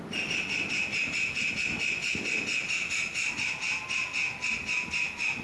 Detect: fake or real real